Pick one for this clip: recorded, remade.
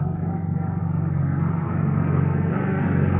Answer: remade